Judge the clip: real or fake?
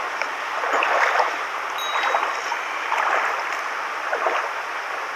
real